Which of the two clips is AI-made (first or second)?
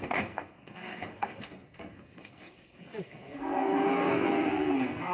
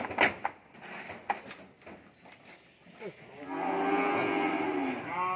first